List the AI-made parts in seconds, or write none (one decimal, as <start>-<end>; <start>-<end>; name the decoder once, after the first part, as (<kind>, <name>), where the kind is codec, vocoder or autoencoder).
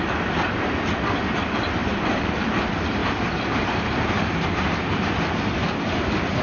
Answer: 1.8-2.3 (vocoder, BigVGAN v2); 3.0-5.4